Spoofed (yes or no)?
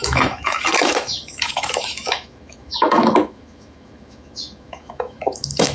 yes